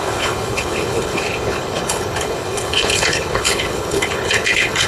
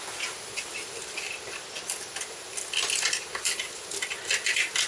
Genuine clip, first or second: second